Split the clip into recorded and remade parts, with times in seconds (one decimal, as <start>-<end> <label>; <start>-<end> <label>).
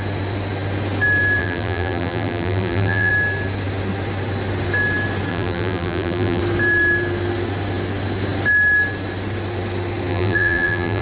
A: 0.0-1.4 recorded; 1.4-3.1 remade; 3.1-5.3 recorded; 5.3-6.4 remade; 6.4-10.1 recorded; 10.1-11.0 remade